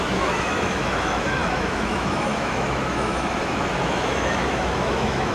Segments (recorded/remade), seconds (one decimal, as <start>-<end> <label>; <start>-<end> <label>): 0.0-5.3 remade